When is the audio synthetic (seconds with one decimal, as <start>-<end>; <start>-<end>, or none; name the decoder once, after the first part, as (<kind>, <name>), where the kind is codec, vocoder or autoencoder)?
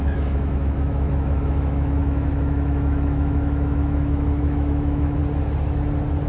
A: 0.0-5.2 (autoencoder, DAC-VAE)